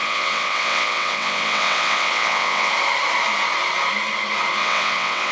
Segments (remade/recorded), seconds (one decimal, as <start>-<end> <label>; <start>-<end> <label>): 0.0-2.7 remade; 2.7-4.6 recorded; 4.6-5.3 remade